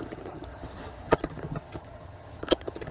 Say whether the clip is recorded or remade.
remade